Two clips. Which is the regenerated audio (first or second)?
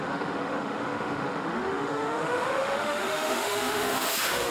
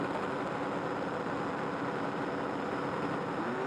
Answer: first